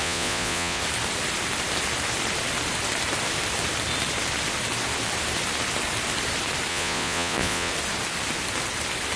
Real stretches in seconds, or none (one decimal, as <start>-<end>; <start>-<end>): 0.8-6.7; 7.7-9.2